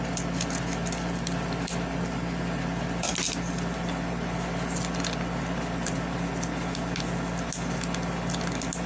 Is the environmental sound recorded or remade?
recorded